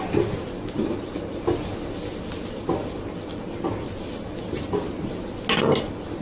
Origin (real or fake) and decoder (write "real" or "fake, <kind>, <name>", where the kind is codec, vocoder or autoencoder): real